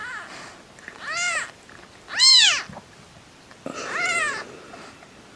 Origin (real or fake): real